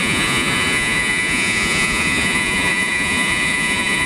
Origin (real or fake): fake